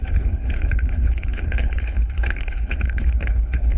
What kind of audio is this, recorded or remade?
remade